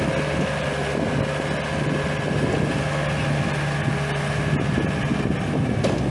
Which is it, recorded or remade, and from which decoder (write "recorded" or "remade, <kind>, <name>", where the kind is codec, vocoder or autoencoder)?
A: recorded